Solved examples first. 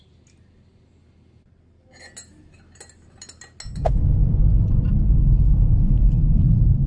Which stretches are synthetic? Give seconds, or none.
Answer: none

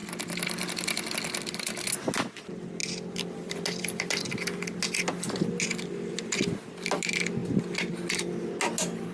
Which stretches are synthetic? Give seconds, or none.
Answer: none

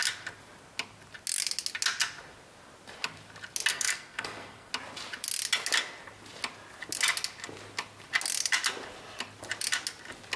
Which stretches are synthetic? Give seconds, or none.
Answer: 3.7-4.7 (codec, SNAC)

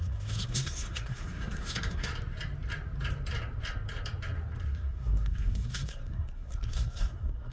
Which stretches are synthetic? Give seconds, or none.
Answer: 0.0-2.1 (codec, SNAC); 4.7-7.5

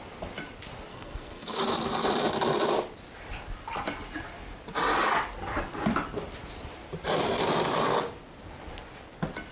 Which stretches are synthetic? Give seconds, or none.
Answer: 0.9-1.6 (codec, SNAC)

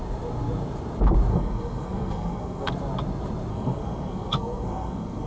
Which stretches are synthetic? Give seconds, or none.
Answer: 1.3-2.7 (codec, SNAC); 3.5-5.3